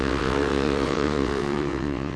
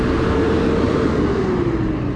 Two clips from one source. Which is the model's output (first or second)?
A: first